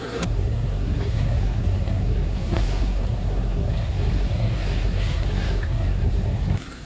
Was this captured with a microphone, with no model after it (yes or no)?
no